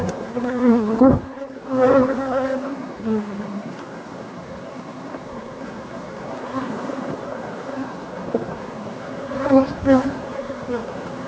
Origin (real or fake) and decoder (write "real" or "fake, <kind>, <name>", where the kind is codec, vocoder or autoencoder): fake, codec, SNAC